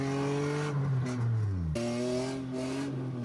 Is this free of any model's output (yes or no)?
yes